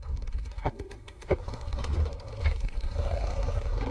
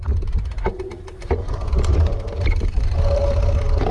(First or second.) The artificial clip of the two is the first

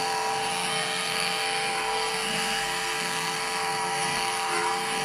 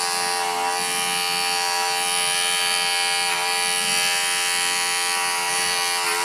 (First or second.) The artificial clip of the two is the first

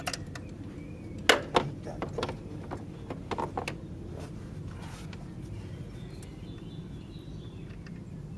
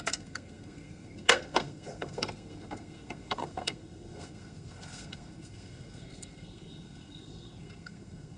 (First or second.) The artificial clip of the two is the second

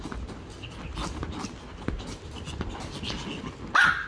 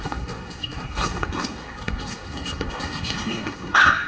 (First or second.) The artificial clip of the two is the second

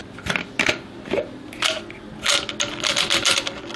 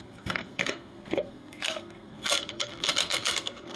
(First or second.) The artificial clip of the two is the second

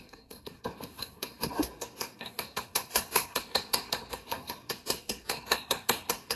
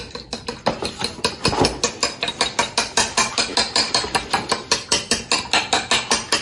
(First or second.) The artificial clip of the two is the first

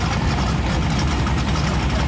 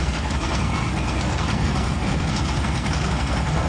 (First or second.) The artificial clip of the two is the second